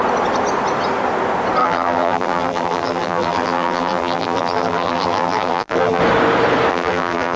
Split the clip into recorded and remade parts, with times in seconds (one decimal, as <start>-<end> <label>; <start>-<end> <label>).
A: 0.0-1.6 recorded; 1.6-6.0 remade; 6.0-6.7 recorded; 6.7-7.4 remade